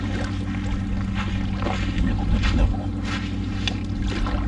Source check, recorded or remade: recorded